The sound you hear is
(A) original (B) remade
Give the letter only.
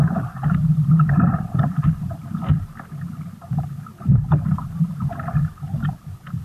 B